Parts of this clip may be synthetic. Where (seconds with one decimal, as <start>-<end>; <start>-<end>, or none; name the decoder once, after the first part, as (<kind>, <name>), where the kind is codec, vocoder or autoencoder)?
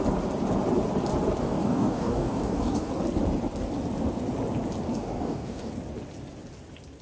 1.4-2.9 (codec, DAC); 4.9-5.7